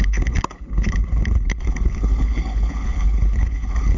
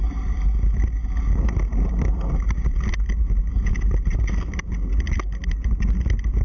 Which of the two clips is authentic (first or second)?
second